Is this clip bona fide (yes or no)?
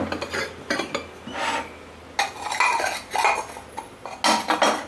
yes